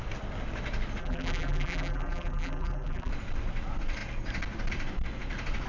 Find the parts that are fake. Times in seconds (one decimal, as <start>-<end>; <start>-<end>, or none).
1.0-3.1